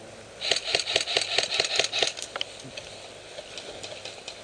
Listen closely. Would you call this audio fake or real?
real